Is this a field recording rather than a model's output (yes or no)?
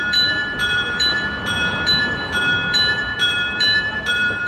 no